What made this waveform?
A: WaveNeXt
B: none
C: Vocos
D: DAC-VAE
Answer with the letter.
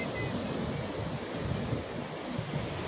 B